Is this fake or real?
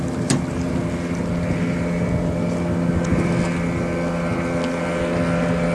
real